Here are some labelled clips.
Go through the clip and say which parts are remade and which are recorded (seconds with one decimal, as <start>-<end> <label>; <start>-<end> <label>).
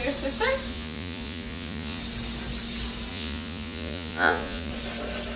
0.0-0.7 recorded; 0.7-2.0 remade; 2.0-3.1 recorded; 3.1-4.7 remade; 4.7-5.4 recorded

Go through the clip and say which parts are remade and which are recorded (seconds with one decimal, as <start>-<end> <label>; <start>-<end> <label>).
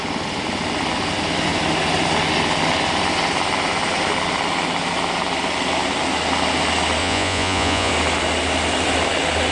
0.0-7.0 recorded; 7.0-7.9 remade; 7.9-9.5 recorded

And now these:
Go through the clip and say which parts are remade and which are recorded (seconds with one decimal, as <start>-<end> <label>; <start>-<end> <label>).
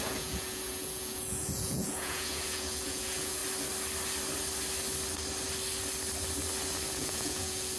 0.0-3.4 remade; 3.4-6.9 recorded; 6.9-7.8 remade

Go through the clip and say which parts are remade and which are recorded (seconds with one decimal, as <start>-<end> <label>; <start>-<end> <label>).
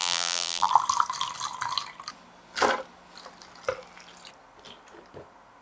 0.0-0.7 remade; 0.7-5.6 recorded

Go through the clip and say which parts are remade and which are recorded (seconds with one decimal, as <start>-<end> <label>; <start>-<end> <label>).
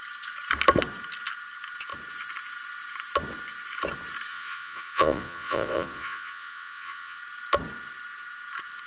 0.0-4.3 recorded; 4.3-7.2 remade; 7.2-8.9 recorded